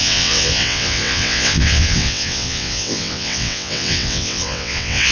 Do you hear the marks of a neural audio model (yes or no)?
yes